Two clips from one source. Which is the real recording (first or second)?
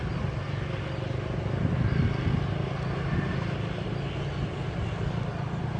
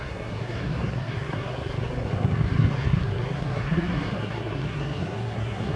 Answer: first